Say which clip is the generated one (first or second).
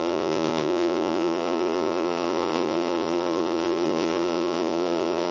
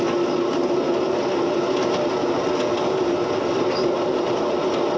first